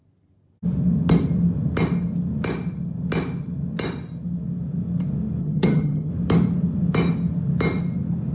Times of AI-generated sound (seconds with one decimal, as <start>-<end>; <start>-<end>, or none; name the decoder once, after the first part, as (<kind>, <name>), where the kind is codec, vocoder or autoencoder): 5.4-6.1 (vocoder, HiFi-GAN)